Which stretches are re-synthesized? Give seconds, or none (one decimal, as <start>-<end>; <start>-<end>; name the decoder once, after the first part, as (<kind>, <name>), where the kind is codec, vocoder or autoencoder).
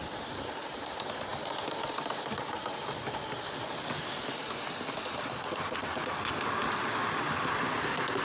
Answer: none